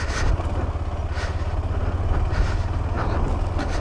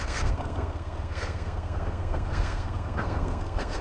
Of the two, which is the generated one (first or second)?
second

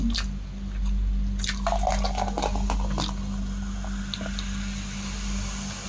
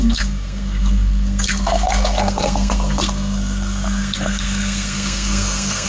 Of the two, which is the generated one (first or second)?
second